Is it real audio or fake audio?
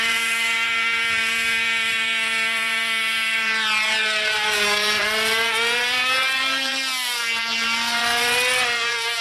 fake